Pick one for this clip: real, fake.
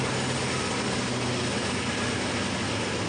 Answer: real